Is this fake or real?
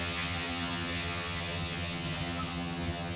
fake